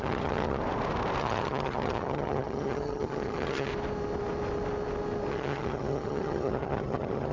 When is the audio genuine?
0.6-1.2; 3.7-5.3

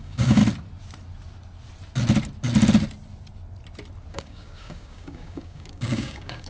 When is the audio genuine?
0.4-4.1

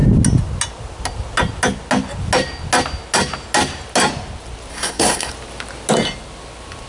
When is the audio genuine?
0.0-4.7; 5.3-6.9

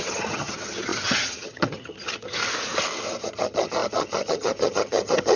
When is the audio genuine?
2.4-3.2

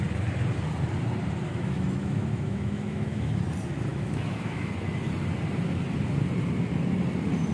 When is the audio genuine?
0.0-1.5; 3.3-3.9; 4.7-7.5

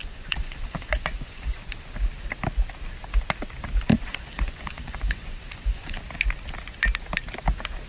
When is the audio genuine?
1.6-3.9; 6.0-7.9